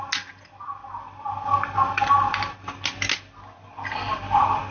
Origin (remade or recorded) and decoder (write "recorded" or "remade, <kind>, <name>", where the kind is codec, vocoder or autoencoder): recorded